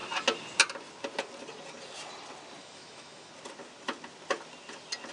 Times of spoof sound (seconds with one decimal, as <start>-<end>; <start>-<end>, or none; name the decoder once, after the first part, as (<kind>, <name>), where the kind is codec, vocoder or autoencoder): 2.6-3.3 (autoencoder, DAC-VAE)